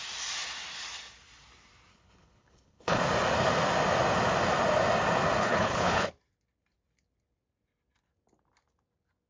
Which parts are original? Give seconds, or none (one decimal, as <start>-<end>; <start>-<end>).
0.0-1.9; 3.0-5.4; 6.1-9.3